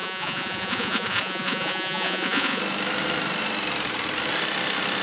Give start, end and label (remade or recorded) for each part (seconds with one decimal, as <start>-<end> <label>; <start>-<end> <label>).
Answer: 0.0-2.6 remade; 2.6-5.0 recorded